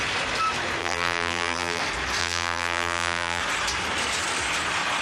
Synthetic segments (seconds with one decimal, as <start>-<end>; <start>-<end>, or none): 0.8-1.8; 2.2-3.4